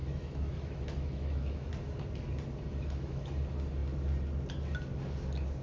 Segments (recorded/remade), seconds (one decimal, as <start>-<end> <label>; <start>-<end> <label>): 0.0-1.7 remade; 1.7-2.7 recorded; 2.7-3.3 remade; 3.3-5.6 recorded